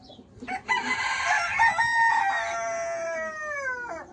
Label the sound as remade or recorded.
recorded